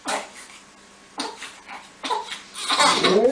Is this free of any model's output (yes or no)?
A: yes